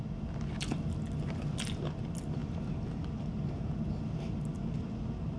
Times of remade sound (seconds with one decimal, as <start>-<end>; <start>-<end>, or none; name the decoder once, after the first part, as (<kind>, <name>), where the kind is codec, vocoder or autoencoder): none